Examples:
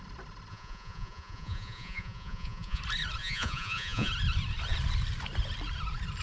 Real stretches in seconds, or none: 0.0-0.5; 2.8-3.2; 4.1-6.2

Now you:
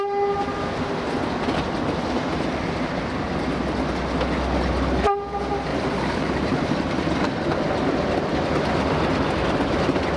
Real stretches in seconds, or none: 0.0-5.7; 6.9-10.2

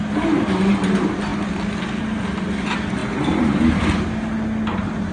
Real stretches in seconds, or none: 0.0-5.1